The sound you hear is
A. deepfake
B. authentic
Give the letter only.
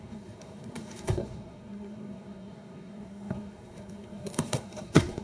A